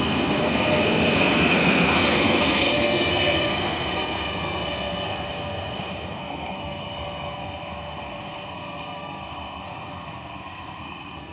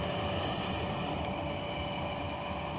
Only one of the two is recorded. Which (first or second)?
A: second